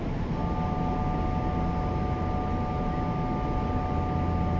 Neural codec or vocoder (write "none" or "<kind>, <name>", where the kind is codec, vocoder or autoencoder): none